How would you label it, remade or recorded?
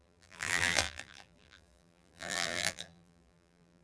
remade